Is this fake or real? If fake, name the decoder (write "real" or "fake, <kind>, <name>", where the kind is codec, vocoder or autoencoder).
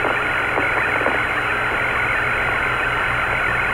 real